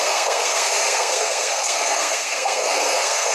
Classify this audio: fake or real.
fake